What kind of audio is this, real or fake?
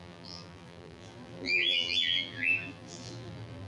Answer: fake